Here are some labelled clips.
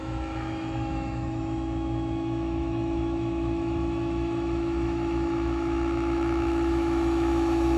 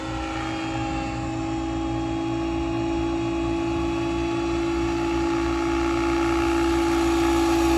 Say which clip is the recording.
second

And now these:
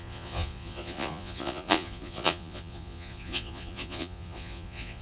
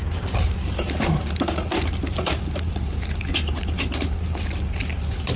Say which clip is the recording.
second